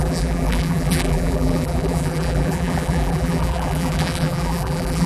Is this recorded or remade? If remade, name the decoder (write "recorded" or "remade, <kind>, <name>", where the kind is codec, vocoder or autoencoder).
remade, vocoder, BigVGAN v2